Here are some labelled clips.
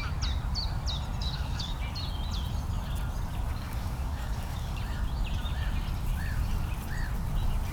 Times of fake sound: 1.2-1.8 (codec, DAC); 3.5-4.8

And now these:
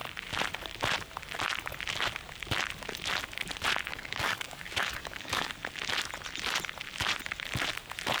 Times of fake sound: 3.9-5.5 (codec, DAC)